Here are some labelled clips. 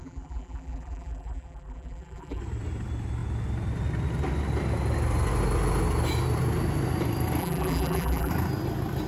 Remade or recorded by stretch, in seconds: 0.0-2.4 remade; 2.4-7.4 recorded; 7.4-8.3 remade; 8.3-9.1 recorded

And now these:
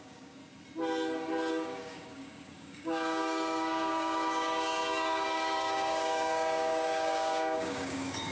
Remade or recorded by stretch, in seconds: 0.0-0.4 remade; 0.4-1.5 recorded; 1.5-8.3 remade

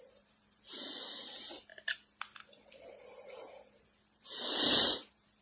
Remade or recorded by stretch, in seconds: 0.0-1.7 remade; 1.7-4.2 recorded; 4.2-5.4 remade

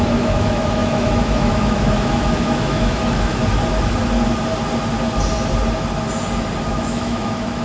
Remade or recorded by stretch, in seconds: 0.0-3.4 remade; 3.4-6.7 recorded; 6.7-7.6 remade

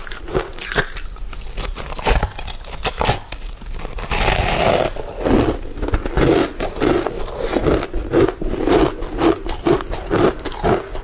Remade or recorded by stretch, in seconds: 0.0-11.0 recorded

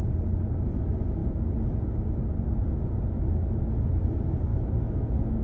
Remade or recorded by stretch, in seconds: 0.0-4.5 recorded; 4.5-5.4 remade

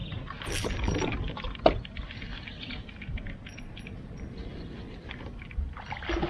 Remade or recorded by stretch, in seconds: 0.0-6.3 recorded

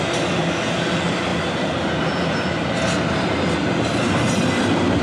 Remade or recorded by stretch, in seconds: 0.0-5.0 recorded